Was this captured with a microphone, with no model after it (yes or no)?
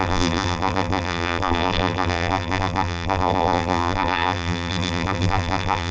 no